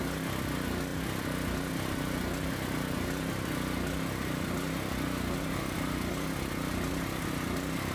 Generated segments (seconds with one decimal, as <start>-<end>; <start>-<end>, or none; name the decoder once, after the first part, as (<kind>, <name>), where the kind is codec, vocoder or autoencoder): none